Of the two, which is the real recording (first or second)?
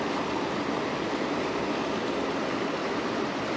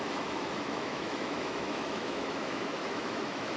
first